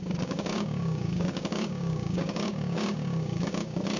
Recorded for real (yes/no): no